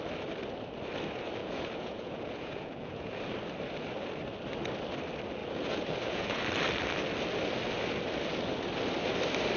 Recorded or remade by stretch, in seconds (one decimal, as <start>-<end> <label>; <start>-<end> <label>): 0.0-1.4 recorded; 1.4-3.1 remade; 3.1-5.4 recorded; 5.4-6.4 remade; 6.4-9.6 recorded